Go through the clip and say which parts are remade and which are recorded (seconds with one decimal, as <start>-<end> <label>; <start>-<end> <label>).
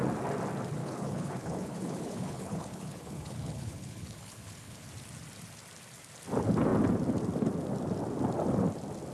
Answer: 0.0-0.8 recorded; 0.8-4.9 remade; 4.9-9.1 recorded